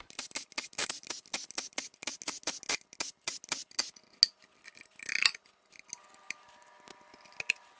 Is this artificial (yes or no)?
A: no